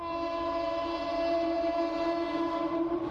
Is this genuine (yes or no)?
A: no